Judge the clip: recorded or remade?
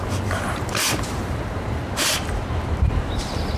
remade